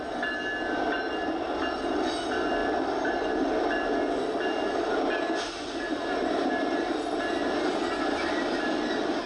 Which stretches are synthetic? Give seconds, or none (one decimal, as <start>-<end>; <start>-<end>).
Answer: 1.6-2.1; 2.6-3.7